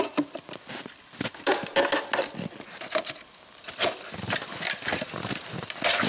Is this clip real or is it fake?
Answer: real